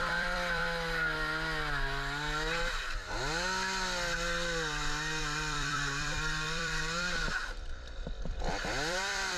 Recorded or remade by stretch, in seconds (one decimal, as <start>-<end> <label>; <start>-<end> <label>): 0.0-0.6 remade; 0.6-5.2 recorded; 5.2-9.4 remade